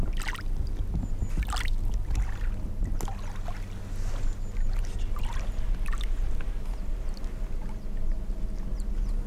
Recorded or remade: recorded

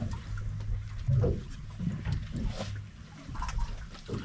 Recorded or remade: recorded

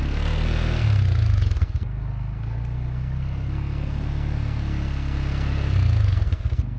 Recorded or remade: remade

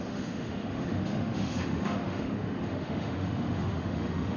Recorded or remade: remade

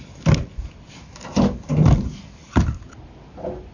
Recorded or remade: recorded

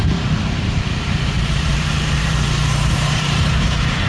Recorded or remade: remade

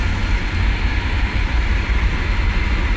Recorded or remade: recorded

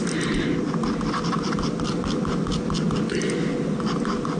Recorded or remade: recorded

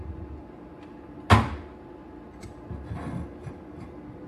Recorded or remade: recorded